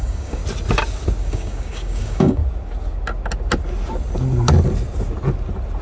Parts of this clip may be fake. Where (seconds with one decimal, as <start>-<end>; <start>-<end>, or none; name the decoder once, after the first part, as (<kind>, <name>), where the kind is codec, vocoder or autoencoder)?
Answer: 0.0-0.4 (codec, DAC); 1.2-2.4

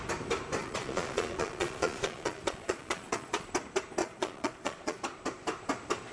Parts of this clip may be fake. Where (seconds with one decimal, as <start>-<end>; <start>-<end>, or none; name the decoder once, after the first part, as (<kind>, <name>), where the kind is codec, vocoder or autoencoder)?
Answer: 0.6-3.5 (vocoder, Vocos); 4.0-5.0

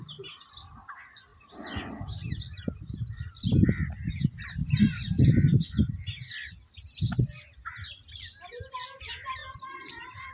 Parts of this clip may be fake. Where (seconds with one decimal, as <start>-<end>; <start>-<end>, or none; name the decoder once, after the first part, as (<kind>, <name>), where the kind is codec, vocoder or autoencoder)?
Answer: 4.6-5.2 (vocoder, BigVGAN v2); 9.4-10.3